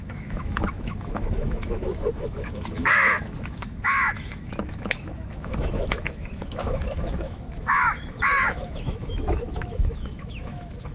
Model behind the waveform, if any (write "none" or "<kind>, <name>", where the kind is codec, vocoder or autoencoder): autoencoder, DAC-VAE